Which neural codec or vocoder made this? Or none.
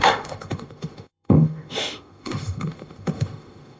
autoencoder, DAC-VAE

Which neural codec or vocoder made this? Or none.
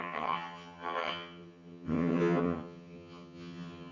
vocoder, HiFi-GAN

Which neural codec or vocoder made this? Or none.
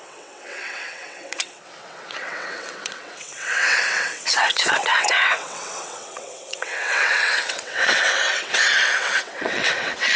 vocoder, WaveNeXt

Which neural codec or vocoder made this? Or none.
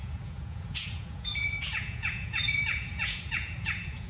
vocoder, Vocos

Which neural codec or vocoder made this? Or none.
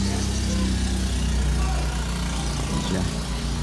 none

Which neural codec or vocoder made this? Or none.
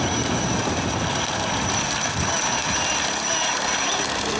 none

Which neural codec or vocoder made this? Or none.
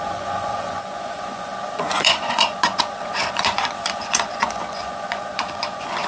vocoder, Vocos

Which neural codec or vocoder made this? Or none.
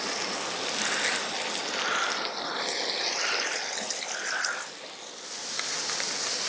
none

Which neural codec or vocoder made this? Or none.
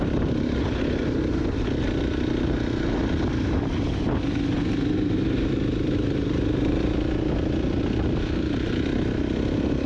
none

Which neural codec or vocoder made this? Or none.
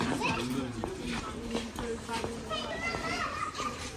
vocoder, BigVGAN v2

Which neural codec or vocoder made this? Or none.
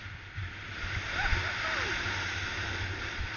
none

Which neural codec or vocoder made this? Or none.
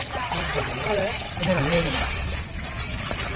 vocoder, Vocos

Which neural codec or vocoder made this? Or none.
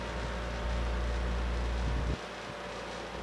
none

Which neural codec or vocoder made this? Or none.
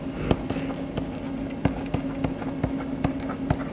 none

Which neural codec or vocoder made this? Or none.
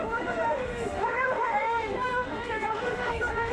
autoencoder, DAC-VAE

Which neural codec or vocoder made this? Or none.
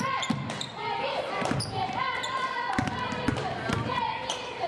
vocoder, BigVGAN v2